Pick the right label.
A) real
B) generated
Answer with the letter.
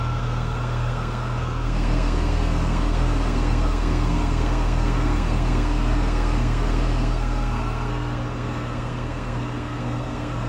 B